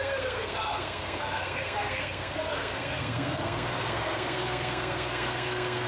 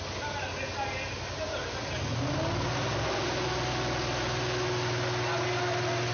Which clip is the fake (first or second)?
first